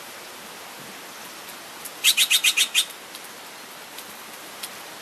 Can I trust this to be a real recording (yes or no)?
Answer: yes